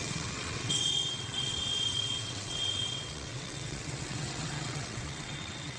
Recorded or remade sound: remade